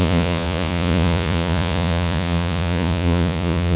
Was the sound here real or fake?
fake